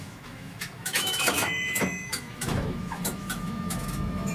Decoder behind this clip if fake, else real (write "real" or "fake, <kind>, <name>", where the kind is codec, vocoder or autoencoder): fake, autoencoder, DAC-VAE